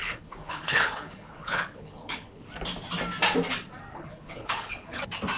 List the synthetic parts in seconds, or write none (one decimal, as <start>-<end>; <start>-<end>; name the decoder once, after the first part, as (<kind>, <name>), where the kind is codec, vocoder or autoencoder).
0.0-2.4 (codec, HILCodec); 3.9-5.0